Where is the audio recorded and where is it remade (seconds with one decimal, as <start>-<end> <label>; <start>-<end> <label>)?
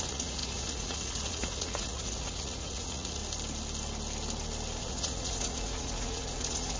0.0-3.2 remade; 3.2-4.8 recorded; 4.8-6.8 remade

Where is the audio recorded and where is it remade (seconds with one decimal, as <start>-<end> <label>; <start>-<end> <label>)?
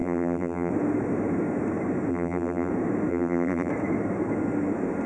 0.0-0.7 remade; 0.7-2.1 recorded; 2.1-2.7 remade; 2.7-3.1 recorded; 3.1-3.7 remade; 3.7-5.1 recorded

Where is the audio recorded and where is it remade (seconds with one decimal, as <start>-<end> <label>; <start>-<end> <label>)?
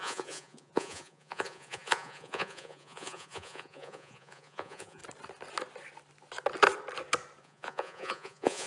0.0-5.0 remade; 5.0-7.4 recorded; 7.4-8.7 remade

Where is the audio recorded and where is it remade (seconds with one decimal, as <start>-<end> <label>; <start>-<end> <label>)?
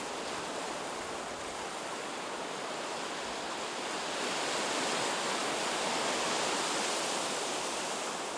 0.0-8.4 recorded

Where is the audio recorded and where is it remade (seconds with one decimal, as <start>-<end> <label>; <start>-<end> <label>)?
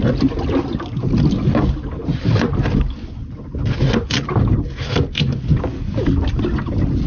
0.0-7.1 recorded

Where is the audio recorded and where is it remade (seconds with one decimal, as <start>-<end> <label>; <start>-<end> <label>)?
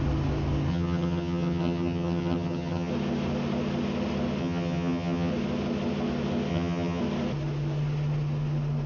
0.0-0.7 recorded; 0.7-2.9 remade; 2.9-4.4 recorded; 4.4-5.3 remade; 5.3-6.5 recorded; 6.5-7.0 remade; 7.0-8.9 recorded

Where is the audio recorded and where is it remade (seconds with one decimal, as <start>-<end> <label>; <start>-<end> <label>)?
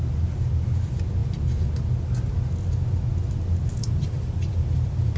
0.0-3.8 recorded; 3.8-5.2 remade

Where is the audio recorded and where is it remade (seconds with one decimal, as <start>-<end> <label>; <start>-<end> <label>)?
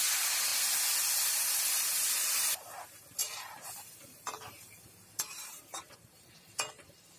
0.0-3.2 recorded; 3.2-6.3 remade; 6.3-7.2 recorded